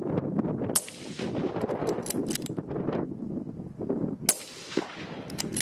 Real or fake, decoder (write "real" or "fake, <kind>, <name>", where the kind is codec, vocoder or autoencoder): real